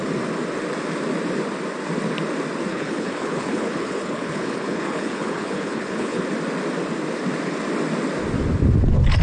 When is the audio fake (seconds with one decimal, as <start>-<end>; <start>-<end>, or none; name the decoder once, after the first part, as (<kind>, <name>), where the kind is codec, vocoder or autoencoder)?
2.7-6.2 (codec, HILCodec)